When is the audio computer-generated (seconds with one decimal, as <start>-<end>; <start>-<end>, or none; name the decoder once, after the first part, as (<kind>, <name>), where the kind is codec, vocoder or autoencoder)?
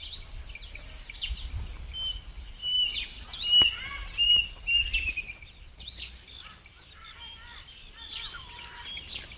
none